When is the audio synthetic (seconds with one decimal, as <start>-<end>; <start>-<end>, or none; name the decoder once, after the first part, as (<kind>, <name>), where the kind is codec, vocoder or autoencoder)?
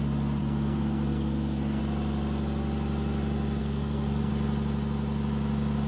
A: 0.4-1.8 (codec, SNAC); 3.6-4.3